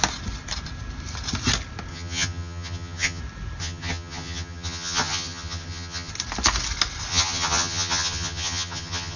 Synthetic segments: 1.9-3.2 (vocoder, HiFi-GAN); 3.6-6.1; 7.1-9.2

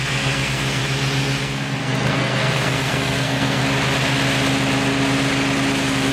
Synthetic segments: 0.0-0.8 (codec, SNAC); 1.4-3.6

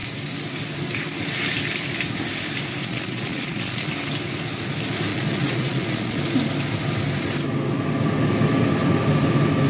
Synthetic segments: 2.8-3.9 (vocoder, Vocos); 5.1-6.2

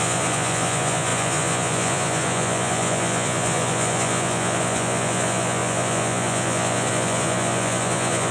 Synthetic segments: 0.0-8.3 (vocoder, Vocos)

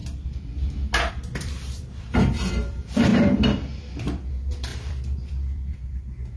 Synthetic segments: 1.1-6.4 (vocoder, BigVGAN v2)